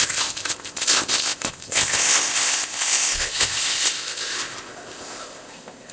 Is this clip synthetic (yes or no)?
yes